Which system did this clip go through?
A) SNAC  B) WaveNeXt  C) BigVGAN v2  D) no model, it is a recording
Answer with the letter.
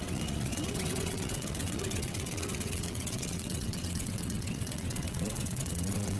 B